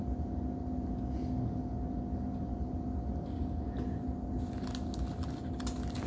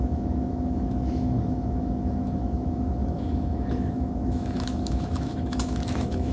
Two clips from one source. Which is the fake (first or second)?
second